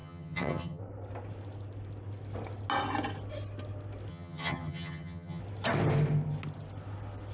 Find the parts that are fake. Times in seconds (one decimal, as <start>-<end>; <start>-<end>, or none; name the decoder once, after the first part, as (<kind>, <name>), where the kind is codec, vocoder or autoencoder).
0.0-0.8 (vocoder, HiFi-GAN); 4.1-5.4